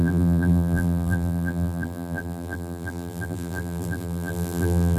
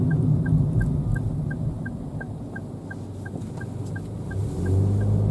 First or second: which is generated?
first